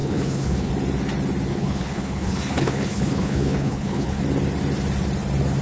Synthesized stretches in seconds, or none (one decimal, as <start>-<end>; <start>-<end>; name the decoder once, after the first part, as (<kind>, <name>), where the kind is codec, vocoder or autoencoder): 0.0-0.7 (codec, HILCodec); 1.5-4.2